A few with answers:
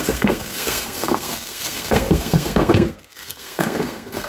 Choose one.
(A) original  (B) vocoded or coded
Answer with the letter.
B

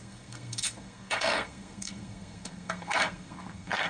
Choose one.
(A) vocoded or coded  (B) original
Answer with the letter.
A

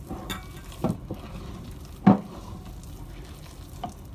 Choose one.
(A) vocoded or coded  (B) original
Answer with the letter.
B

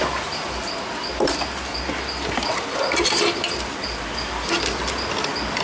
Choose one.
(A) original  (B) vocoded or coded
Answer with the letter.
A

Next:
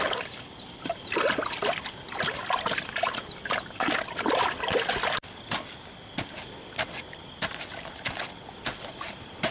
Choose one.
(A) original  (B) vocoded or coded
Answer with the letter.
A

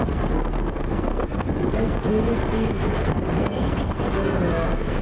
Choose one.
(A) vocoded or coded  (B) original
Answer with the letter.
A